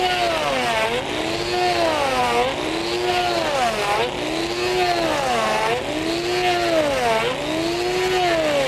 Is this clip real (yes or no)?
yes